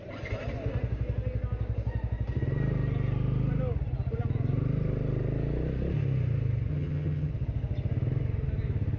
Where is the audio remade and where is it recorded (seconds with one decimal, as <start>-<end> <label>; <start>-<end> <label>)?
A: 0.0-6.7 recorded; 6.7-7.3 remade; 7.3-9.0 recorded